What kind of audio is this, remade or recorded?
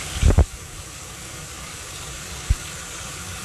remade